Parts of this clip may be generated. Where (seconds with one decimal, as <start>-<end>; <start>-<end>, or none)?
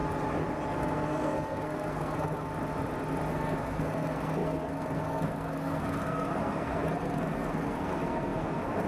0.7-2.5; 3.3-8.9